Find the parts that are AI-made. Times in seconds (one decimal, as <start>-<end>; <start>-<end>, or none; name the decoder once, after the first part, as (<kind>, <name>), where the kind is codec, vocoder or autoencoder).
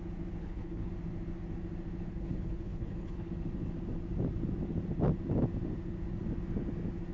0.4-0.9 (codec, HILCodec); 2.1-3.3